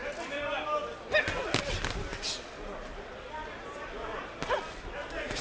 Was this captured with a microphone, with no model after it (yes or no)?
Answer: yes